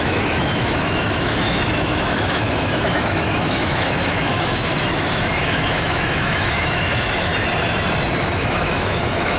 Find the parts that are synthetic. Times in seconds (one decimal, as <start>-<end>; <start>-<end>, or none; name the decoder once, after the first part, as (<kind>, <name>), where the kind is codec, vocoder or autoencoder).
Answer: 0.0-7.3 (autoencoder, DAC-VAE); 8.2-9.4